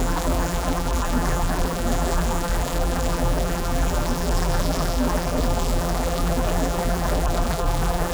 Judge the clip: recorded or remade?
remade